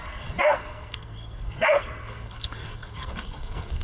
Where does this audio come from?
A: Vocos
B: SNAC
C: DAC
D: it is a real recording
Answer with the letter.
B